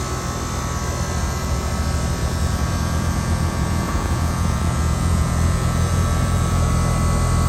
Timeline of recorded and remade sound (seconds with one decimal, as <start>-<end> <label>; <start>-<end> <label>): 0.0-1.2 recorded; 1.2-1.7 remade; 1.7-2.2 recorded; 2.2-6.7 remade; 6.7-7.5 recorded